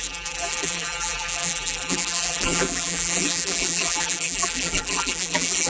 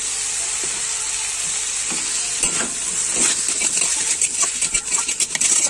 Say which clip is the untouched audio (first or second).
second